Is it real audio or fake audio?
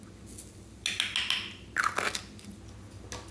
real